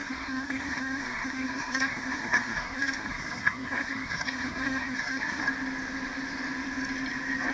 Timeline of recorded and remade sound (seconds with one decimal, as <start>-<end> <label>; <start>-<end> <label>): 0.0-5.4 remade; 5.4-7.5 recorded